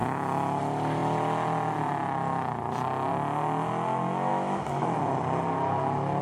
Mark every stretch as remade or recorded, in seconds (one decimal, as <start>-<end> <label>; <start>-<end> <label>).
0.0-4.3 recorded; 4.3-5.0 remade; 5.0-6.2 recorded